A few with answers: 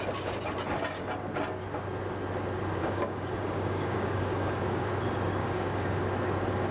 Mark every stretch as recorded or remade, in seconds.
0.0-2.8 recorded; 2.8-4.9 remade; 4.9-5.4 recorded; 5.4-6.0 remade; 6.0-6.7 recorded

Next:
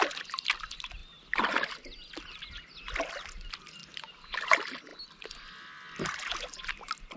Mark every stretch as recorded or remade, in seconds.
0.0-7.2 recorded

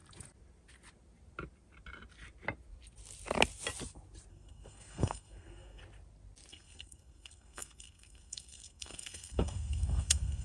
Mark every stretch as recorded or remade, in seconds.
0.0-4.3 recorded; 4.3-5.8 remade; 5.8-6.5 recorded; 6.5-10.4 remade

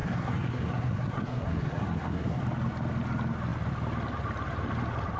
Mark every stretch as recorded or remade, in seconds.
0.0-2.4 remade; 2.4-5.2 recorded

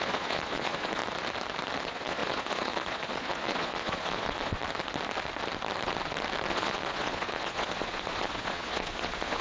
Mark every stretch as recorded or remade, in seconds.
0.0-1.0 remade; 1.0-1.8 recorded; 1.8-4.6 remade; 4.6-6.5 recorded; 6.5-9.4 remade